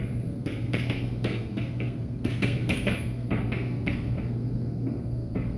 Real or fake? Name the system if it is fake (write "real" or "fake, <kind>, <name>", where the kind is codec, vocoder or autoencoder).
fake, codec, SNAC